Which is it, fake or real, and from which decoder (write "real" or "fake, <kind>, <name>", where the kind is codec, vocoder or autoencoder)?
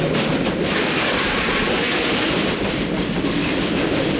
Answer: real